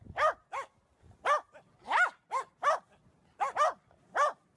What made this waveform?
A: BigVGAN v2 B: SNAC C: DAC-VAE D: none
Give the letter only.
D